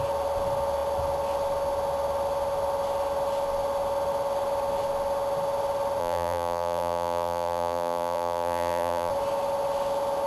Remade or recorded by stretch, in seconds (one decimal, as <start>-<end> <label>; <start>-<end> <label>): 0.0-6.0 recorded; 6.0-9.1 remade; 9.1-10.3 recorded